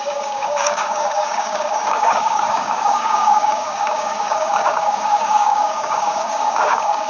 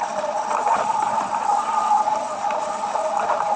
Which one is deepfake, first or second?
first